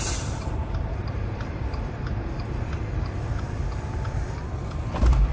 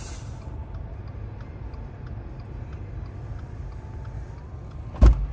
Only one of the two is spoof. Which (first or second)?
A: first